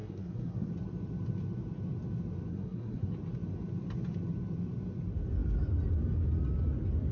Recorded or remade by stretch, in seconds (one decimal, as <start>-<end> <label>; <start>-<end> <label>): 0.0-0.7 remade; 0.7-2.5 recorded; 2.5-3.1 remade; 3.1-7.1 recorded